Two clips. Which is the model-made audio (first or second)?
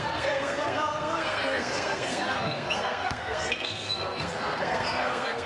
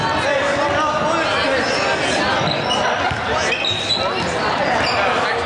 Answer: first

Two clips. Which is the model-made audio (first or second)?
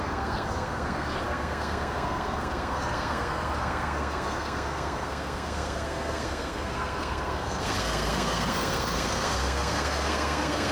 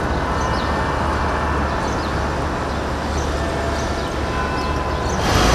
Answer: first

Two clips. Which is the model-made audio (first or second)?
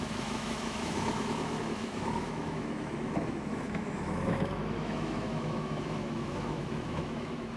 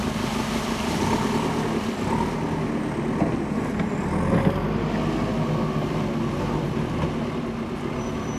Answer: first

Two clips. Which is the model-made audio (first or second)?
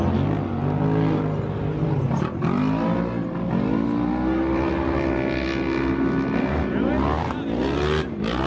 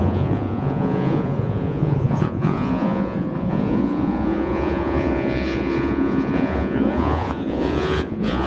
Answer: second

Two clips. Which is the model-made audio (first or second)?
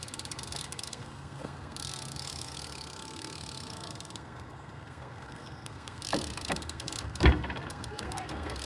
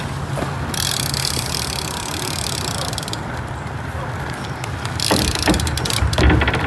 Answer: first